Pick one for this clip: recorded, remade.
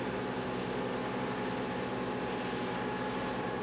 recorded